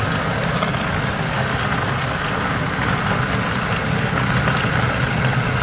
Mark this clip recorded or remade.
recorded